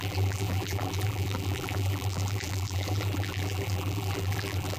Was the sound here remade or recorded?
remade